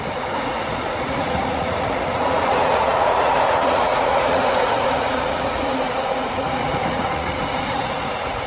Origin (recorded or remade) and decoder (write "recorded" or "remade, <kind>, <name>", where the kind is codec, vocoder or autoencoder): remade, vocoder, Vocos